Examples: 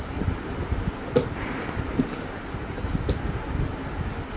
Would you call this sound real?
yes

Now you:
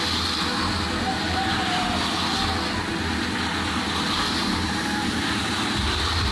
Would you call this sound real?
yes